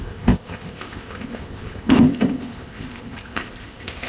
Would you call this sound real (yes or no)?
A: no